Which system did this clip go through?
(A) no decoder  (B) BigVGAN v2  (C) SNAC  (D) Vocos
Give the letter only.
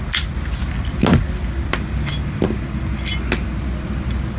A